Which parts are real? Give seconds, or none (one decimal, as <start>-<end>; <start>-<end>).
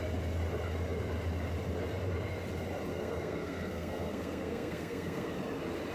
0.0-2.9; 5.3-5.9